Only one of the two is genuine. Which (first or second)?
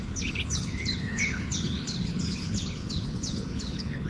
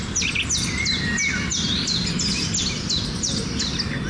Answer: second